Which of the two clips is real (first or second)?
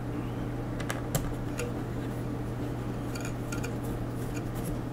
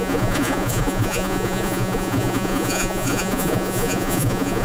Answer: first